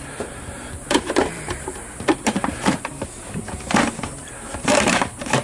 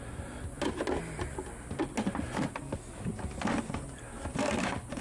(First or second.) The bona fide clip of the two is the second